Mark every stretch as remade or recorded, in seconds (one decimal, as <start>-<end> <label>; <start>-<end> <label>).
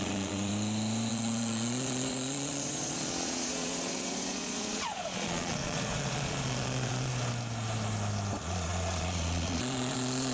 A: 0.0-0.5 remade; 0.5-1.1 recorded; 1.1-7.1 remade; 7.1-8.4 recorded; 8.4-10.3 remade